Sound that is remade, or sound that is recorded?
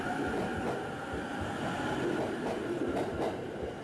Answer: recorded